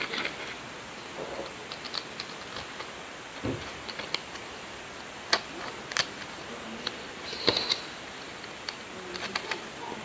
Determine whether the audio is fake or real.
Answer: real